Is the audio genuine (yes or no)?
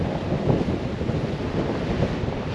yes